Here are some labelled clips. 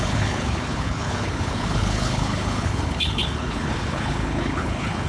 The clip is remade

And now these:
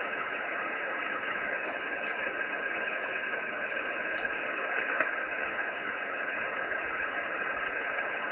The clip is remade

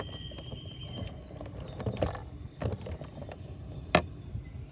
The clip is recorded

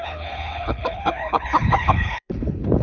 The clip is remade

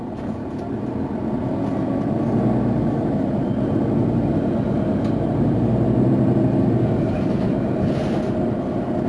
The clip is recorded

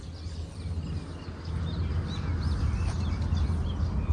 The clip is recorded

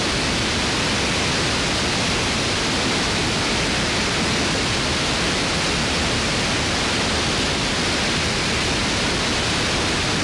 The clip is recorded